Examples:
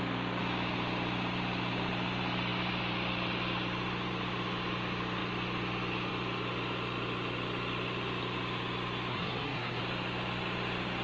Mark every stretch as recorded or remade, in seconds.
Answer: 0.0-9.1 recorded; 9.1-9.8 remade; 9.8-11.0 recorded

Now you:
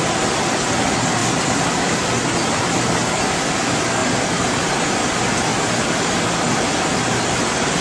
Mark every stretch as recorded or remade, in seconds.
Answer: 0.0-7.8 recorded

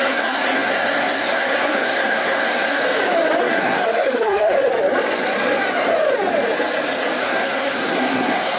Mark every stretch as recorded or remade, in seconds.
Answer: 0.0-2.8 remade; 2.8-3.4 recorded; 3.4-4.7 remade; 4.7-7.2 recorded; 7.2-8.6 remade